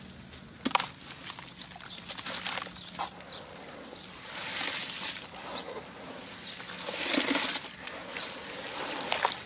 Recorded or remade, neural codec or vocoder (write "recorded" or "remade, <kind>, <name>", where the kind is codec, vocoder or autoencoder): recorded